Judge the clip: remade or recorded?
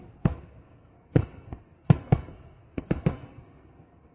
remade